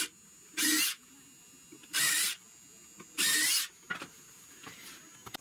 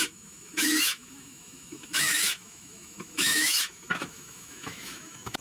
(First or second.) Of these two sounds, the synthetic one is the second